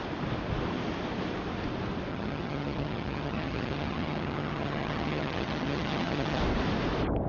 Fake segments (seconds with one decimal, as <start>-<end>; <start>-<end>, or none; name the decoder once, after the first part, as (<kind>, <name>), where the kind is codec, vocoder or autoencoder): 2.1-6.4 (vocoder, HiFi-GAN)